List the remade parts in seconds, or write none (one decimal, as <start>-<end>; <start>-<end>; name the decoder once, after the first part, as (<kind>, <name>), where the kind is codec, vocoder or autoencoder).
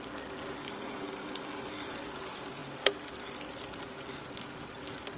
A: 0.6-1.9 (codec, DAC)